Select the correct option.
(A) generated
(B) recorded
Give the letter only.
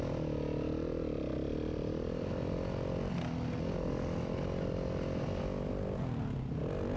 B